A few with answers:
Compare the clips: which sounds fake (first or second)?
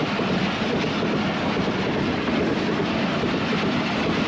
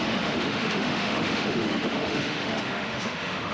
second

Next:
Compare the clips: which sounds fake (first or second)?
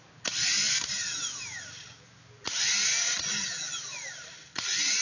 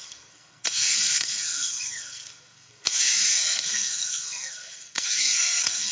second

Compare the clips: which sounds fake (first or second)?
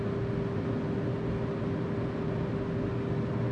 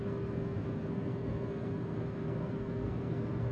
second